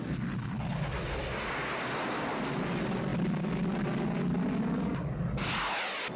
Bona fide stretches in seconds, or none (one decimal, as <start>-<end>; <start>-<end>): 0.0-6.2